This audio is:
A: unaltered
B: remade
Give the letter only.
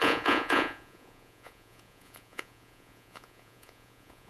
B